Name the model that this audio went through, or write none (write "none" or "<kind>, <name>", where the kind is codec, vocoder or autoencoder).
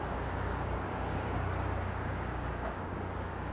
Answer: codec, DAC